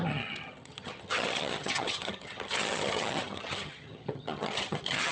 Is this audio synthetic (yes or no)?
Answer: yes